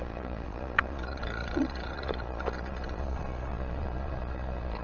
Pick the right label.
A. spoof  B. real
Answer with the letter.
A